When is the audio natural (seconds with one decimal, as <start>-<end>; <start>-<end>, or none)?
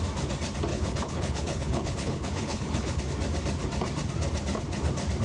0.0-0.7; 3.0-5.2